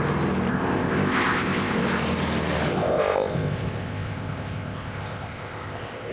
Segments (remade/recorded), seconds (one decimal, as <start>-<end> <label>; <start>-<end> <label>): 0.0-0.5 recorded; 0.5-1.8 remade; 1.8-2.7 recorded; 2.7-6.1 remade